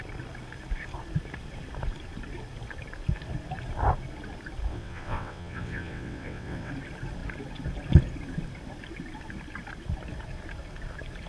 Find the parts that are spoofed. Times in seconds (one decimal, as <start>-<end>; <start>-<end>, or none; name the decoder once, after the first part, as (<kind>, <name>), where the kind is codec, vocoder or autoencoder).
4.7-6.7 (vocoder, WaveNeXt)